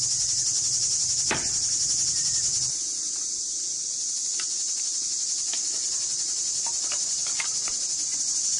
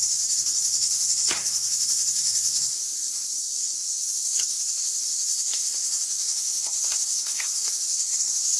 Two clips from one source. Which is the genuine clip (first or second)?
first